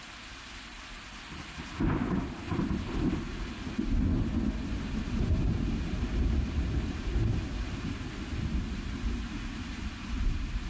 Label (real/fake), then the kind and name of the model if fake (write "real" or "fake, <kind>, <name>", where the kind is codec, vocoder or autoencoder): real